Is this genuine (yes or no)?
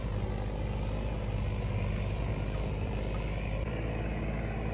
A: yes